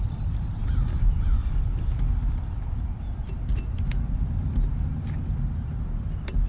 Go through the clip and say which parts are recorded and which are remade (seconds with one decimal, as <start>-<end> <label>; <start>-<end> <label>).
0.0-6.5 recorded